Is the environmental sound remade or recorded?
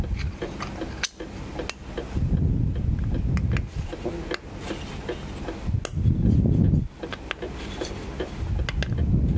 recorded